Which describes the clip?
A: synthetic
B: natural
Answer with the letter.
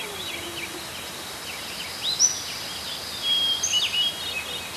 B